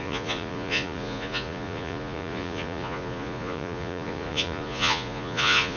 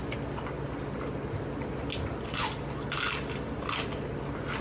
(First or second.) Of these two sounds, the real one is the second